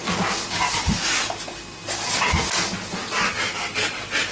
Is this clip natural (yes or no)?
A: yes